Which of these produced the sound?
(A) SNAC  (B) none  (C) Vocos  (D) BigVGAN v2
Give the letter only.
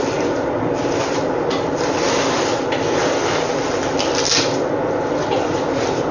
B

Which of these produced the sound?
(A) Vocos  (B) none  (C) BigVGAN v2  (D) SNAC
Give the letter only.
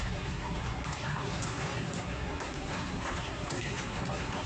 D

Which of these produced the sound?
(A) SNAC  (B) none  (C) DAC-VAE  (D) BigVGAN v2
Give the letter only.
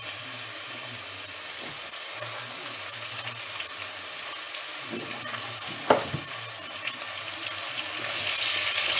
B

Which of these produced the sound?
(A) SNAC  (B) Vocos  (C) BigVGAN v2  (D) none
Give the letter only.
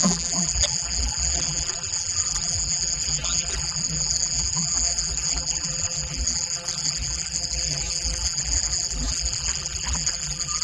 C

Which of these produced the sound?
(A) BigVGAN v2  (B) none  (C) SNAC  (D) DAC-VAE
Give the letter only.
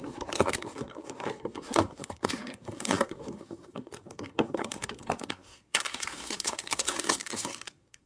C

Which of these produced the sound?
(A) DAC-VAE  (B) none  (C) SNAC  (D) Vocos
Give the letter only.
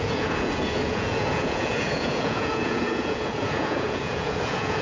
D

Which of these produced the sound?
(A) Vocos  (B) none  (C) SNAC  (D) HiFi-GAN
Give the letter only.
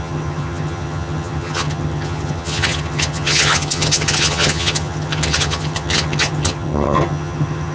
D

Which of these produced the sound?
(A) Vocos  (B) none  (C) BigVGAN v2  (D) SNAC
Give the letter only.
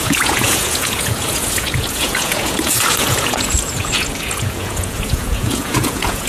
A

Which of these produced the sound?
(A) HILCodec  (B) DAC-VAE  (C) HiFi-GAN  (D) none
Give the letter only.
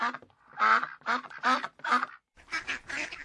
D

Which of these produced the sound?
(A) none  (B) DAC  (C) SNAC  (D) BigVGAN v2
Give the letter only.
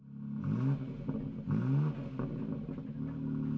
A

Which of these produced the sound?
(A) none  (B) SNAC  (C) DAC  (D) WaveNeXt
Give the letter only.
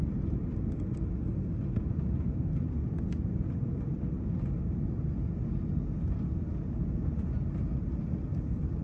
A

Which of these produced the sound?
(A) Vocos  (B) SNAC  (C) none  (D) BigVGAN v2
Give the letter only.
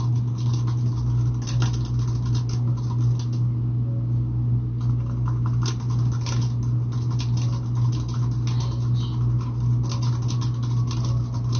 C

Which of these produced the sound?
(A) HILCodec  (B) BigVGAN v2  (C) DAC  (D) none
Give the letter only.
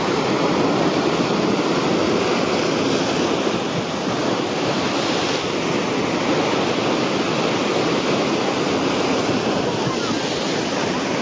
D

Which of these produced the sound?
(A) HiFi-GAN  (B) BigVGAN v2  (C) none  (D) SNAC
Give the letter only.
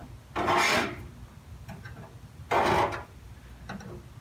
C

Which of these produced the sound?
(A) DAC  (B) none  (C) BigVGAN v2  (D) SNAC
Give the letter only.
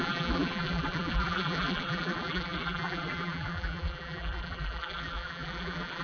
C